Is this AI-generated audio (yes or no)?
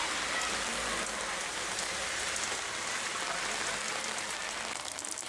no